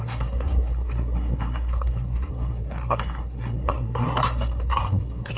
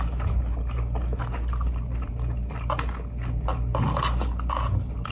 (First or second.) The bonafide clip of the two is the second